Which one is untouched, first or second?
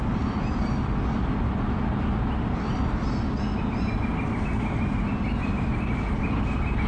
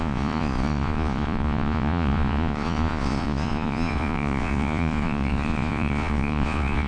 first